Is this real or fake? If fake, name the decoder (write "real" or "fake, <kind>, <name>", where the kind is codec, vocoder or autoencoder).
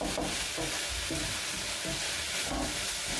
real